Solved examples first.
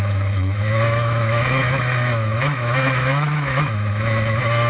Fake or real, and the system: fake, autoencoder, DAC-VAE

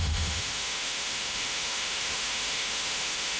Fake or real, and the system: fake, autoencoder, DAC-VAE